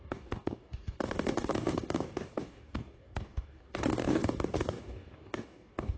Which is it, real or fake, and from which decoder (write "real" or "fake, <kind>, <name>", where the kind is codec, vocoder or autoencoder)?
fake, codec, DAC